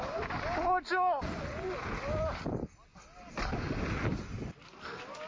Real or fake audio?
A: real